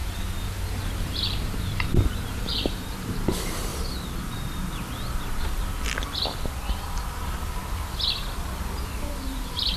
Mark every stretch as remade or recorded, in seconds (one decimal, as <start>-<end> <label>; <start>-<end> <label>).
0.0-3.7 remade; 3.7-8.8 recorded; 8.8-9.8 remade